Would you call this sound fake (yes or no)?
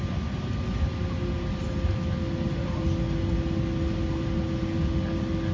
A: no